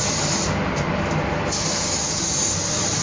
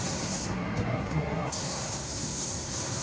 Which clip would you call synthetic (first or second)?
second